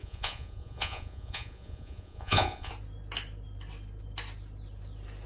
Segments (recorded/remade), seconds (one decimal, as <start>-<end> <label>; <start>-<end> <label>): 0.0-2.7 remade; 2.7-5.3 recorded